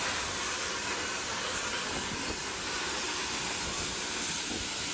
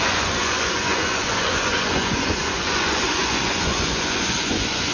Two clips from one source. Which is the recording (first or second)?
first